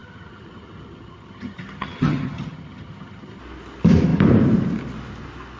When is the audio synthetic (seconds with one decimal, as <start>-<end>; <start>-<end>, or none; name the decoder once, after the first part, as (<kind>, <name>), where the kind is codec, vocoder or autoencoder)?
0.0-3.4 (vocoder, HiFi-GAN)